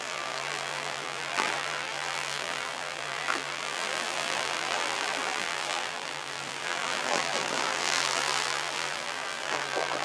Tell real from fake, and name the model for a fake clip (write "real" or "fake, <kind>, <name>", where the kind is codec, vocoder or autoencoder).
fake, vocoder, BigVGAN v2